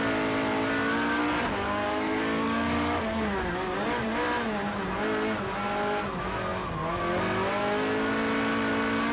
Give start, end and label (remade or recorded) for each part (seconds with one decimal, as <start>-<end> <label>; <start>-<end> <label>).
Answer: 0.0-1.2 recorded; 1.2-3.5 remade; 3.5-9.1 recorded